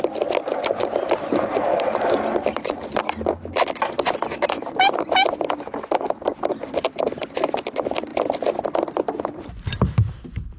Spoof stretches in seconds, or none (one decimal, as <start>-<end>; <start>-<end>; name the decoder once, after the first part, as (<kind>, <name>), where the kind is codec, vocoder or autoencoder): none